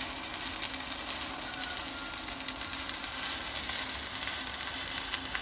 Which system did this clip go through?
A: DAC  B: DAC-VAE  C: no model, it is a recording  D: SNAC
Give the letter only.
C